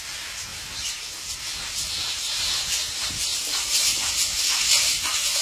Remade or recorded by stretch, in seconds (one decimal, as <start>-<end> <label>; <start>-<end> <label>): 0.0-0.5 recorded; 0.5-1.3 remade; 1.3-3.3 recorded; 3.3-4.2 remade; 4.2-5.4 recorded